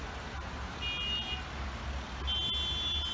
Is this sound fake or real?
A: real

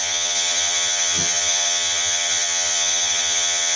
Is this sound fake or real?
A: fake